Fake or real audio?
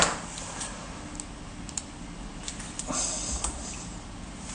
real